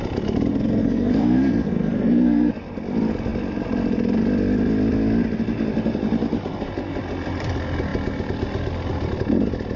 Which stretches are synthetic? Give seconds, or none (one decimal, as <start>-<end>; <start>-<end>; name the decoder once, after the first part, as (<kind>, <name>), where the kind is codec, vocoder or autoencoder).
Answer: 0.5-2.5 (codec, SNAC)